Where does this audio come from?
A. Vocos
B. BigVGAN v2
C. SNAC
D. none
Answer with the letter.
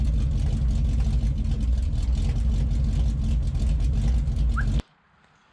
D